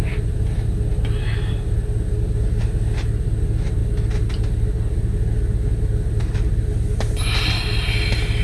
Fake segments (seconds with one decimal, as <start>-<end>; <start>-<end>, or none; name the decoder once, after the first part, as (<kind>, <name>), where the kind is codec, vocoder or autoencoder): none